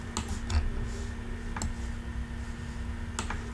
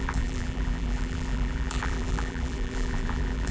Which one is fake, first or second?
second